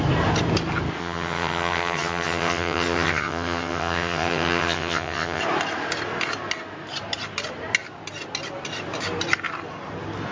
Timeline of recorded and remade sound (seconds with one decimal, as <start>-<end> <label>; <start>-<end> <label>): 0.0-1.0 recorded; 1.0-5.4 remade; 5.4-10.3 recorded